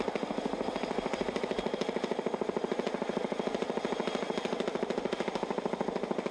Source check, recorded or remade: recorded